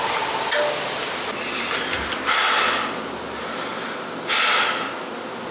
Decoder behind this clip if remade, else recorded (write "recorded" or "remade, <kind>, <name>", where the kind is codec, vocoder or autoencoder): recorded